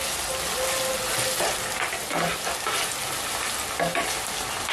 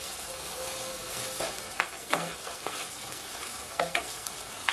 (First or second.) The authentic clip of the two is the first